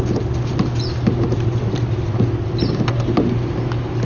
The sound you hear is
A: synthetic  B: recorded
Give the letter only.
B